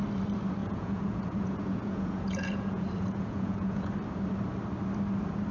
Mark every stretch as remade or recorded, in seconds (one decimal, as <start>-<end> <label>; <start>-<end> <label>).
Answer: 0.0-0.6 recorded; 0.6-3.9 remade; 3.9-5.5 recorded